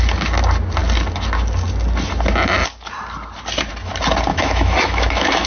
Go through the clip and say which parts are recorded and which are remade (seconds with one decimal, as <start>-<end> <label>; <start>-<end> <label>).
0.0-4.3 recorded; 4.3-5.5 remade